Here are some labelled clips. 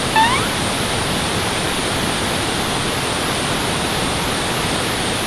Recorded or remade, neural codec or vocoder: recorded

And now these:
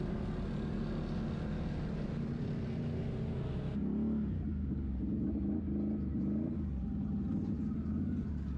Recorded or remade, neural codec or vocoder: recorded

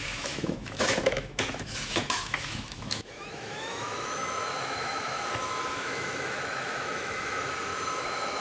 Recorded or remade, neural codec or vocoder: remade, autoencoder, DAC-VAE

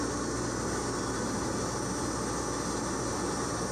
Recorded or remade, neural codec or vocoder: recorded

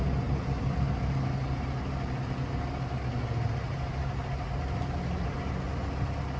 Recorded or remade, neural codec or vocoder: recorded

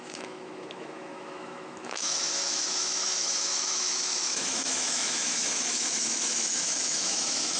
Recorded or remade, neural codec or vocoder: remade, autoencoder, DAC-VAE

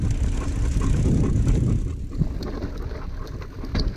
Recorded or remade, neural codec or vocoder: recorded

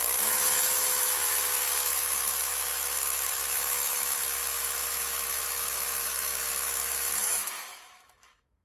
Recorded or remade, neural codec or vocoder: remade, autoencoder, DAC-VAE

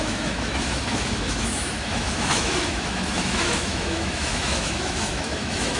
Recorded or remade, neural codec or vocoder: remade, autoencoder, DAC-VAE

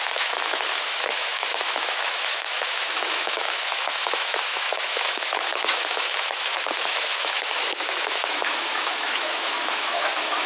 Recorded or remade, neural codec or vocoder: remade, autoencoder, DAC-VAE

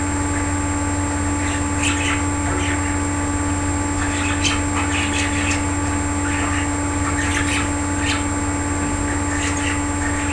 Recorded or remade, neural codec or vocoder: recorded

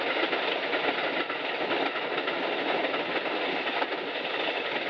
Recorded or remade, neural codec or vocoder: recorded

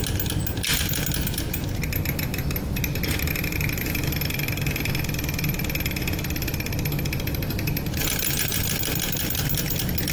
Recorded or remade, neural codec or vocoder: recorded